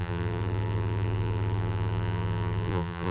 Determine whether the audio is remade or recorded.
remade